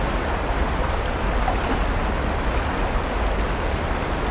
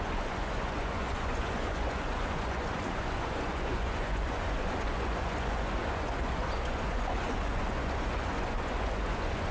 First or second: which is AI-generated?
second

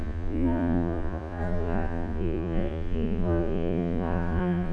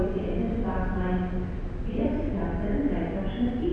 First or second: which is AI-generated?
first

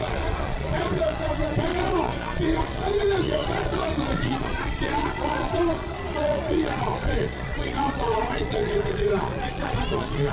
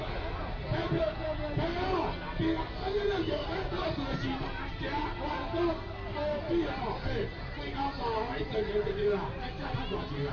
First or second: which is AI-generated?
first